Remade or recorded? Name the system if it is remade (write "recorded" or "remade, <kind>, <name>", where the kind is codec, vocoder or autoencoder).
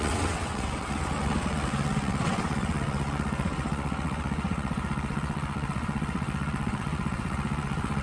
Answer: remade, vocoder, WaveNeXt